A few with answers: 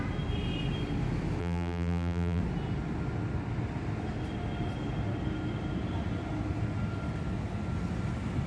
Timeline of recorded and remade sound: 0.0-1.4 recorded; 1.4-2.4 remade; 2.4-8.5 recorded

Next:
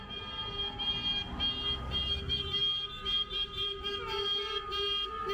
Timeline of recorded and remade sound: 0.0-5.3 recorded

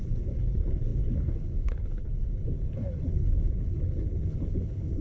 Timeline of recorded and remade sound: 0.0-5.0 remade

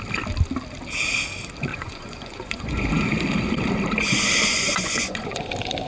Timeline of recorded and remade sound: 0.0-1.7 recorded; 1.7-3.1 remade; 3.1-4.5 recorded; 4.5-5.5 remade; 5.5-5.9 recorded

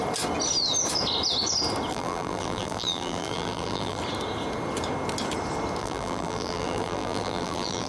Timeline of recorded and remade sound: 0.0-1.9 recorded; 1.9-4.0 remade; 4.0-5.8 recorded; 5.8-7.9 remade

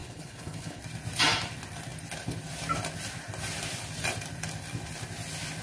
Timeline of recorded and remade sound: 0.0-0.8 remade; 0.8-5.6 recorded